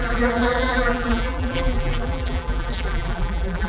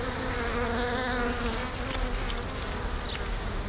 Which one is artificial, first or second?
first